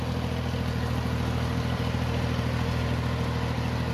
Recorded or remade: recorded